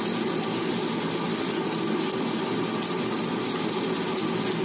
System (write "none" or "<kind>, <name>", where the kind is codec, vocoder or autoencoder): none